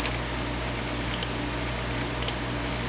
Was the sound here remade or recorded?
recorded